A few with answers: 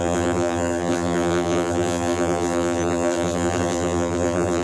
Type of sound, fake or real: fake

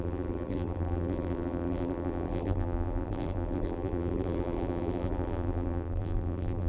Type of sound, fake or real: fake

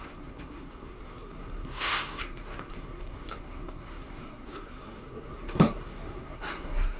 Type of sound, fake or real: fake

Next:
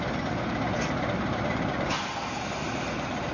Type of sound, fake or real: fake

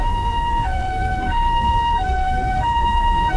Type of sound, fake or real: fake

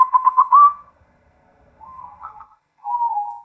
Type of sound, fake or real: fake